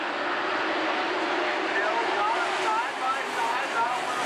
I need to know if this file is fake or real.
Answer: real